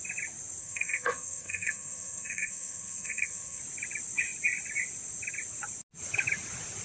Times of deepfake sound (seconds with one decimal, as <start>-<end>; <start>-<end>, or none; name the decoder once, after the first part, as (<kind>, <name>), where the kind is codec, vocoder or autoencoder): 0.6-3.6 (codec, SNAC)